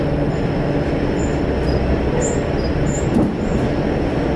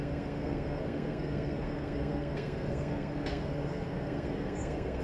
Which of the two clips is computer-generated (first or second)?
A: second